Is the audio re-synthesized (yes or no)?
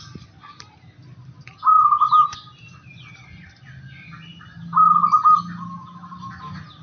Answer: no